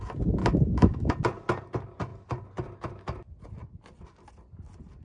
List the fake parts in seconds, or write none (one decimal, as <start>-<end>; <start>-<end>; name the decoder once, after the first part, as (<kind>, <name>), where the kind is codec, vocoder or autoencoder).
0.4-1.1 (autoencoder, DAC-VAE)